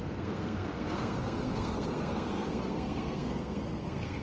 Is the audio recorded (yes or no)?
no